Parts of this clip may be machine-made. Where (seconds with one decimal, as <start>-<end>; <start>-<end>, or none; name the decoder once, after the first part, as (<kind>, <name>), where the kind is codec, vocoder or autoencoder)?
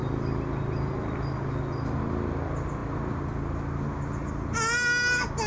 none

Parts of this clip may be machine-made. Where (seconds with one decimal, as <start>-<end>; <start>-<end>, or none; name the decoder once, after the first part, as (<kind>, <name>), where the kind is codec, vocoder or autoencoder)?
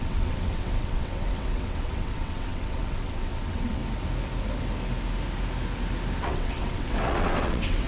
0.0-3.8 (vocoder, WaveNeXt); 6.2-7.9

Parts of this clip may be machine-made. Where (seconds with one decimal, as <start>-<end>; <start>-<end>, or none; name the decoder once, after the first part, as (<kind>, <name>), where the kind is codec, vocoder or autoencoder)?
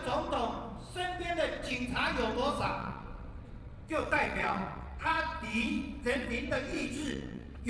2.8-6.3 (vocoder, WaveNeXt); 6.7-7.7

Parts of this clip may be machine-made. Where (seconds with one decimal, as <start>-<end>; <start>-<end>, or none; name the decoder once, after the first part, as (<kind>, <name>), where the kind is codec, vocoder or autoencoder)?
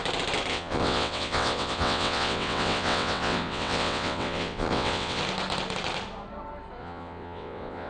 0.5-5.2 (vocoder, WaveNeXt); 6.8-7.9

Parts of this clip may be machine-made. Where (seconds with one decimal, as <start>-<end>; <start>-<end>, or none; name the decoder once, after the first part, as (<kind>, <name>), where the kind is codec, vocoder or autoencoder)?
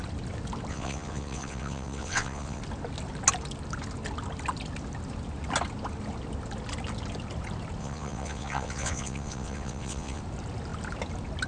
0.7-2.6 (vocoder, WaveNeXt); 7.8-10.2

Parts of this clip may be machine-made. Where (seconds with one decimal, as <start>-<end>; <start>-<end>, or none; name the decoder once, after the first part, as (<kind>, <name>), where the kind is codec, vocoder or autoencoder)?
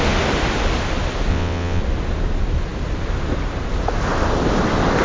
1.3-1.8 (vocoder, WaveNeXt)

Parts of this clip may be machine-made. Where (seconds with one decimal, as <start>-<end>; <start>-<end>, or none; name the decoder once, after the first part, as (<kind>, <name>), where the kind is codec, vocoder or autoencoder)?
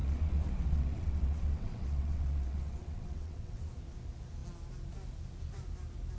0.0-3.7 (vocoder, WaveNeXt)